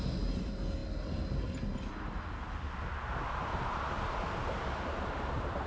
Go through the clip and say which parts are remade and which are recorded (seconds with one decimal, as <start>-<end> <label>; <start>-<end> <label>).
0.0-5.7 recorded